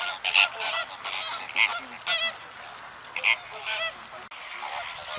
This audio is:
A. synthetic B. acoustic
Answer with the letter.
B